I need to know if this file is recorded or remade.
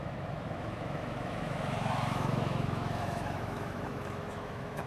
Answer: remade